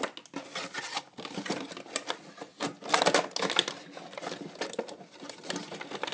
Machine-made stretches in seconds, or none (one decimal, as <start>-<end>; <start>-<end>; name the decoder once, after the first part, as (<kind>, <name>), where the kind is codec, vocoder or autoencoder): none